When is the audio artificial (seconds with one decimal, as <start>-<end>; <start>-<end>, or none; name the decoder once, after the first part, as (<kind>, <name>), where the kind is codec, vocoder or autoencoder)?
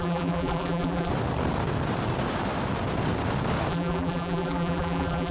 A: 0.0-1.1 (vocoder, BigVGAN v2); 3.7-5.3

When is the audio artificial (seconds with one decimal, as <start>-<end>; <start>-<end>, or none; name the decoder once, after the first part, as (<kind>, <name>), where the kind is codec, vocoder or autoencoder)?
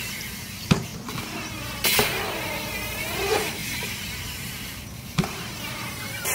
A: 0.0-0.9 (vocoder, BigVGAN v2); 3.0-6.3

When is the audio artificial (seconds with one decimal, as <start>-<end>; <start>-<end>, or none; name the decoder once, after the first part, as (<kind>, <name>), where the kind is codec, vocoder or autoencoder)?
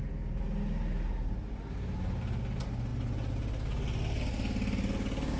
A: none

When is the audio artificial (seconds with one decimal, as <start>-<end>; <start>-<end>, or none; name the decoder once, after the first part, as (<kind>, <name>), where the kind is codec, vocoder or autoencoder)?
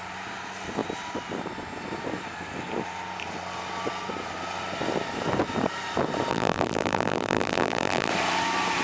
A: 6.3-8.1 (vocoder, BigVGAN v2)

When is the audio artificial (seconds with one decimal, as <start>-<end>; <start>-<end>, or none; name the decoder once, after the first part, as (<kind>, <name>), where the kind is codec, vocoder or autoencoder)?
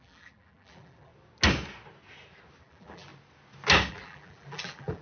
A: 0.0-1.1 (vocoder, BigVGAN v2); 2.6-3.1; 3.9-5.0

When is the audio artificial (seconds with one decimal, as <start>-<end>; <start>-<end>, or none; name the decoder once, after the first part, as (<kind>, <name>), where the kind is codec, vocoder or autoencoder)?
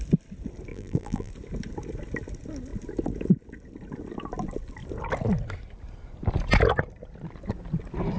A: 0.7-1.3 (vocoder, BigVGAN v2)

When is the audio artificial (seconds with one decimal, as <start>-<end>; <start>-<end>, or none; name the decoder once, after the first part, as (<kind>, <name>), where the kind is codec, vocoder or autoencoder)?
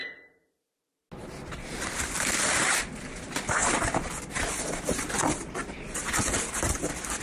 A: none